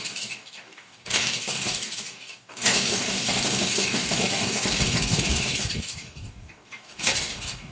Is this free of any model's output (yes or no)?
no